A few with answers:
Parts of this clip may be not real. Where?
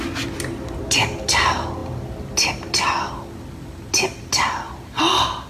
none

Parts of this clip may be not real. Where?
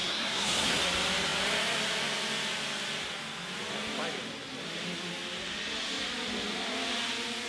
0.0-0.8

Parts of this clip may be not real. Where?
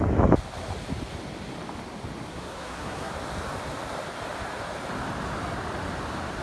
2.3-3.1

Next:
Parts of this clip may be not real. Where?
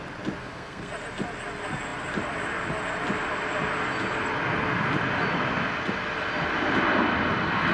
0.4-0.9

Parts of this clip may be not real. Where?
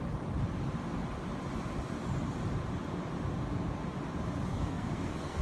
4.5-5.4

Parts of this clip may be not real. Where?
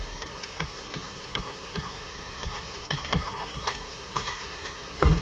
0.0-5.2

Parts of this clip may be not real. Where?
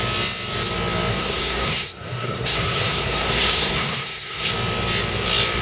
1.1-4.5